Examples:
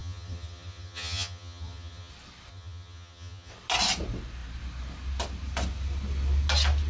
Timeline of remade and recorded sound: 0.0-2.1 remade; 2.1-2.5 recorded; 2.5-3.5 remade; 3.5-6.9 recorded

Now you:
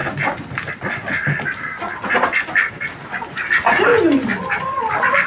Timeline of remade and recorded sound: 0.0-5.3 recorded

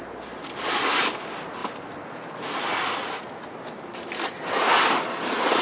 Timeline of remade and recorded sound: 0.0-5.6 recorded